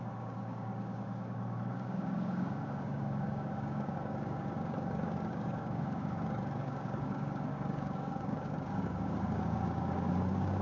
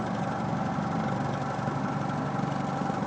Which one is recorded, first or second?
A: second